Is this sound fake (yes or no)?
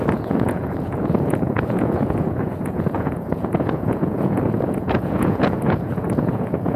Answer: yes